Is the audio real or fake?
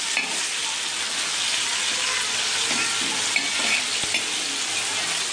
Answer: real